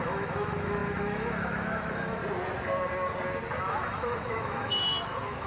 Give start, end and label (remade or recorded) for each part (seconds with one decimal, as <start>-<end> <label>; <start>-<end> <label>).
0.0-2.2 remade; 2.2-3.6 recorded; 3.6-5.5 remade